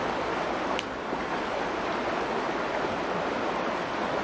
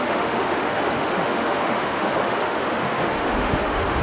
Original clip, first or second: first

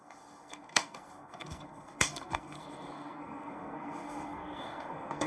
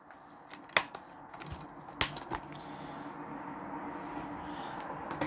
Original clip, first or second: second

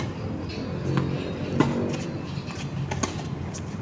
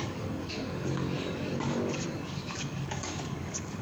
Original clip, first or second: first